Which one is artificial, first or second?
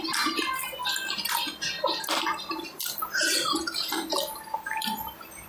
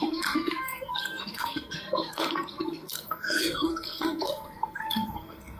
second